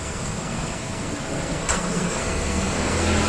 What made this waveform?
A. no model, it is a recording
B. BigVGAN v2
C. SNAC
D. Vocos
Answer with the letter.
C